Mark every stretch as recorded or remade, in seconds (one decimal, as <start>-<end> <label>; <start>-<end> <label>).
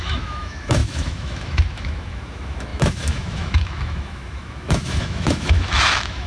0.0-6.3 remade